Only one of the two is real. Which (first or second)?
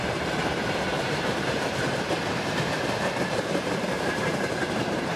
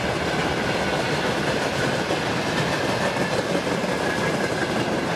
second